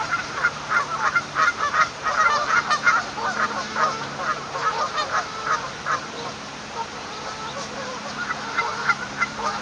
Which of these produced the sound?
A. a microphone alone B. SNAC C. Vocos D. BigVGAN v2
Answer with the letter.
D